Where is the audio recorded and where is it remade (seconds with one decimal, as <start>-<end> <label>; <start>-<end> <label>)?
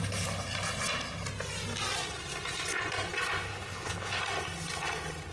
0.0-3.5 recorded; 3.5-4.2 remade; 4.2-5.3 recorded